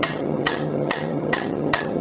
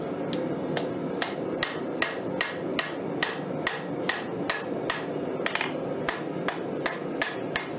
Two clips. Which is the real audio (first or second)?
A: second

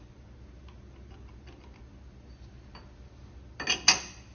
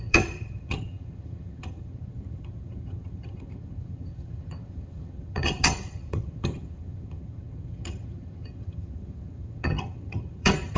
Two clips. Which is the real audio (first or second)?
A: first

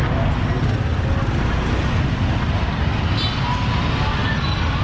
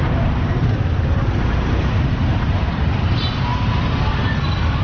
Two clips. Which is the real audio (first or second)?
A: first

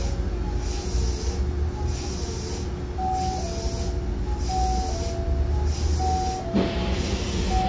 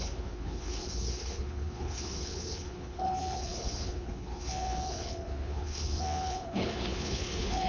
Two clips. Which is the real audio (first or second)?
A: first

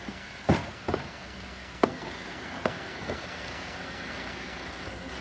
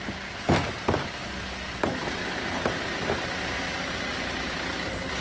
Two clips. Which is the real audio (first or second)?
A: second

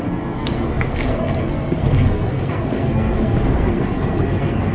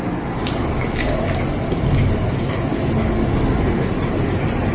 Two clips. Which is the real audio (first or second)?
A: second